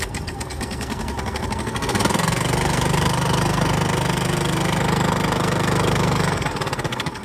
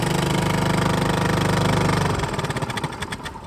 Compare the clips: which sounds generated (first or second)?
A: first